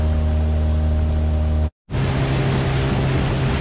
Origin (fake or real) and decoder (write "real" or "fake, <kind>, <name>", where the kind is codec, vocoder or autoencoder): real